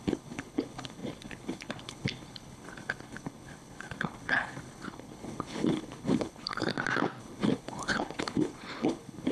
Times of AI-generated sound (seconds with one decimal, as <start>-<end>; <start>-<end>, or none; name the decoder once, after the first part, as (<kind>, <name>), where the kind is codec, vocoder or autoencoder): 0.0-6.7 (codec, HILCodec); 7.2-9.3